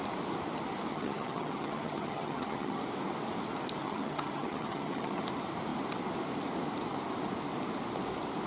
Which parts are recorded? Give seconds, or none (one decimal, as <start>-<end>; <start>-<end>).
0.0-0.9; 2.8-3.8; 5.2-8.5